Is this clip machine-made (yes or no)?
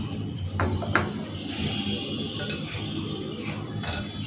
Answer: no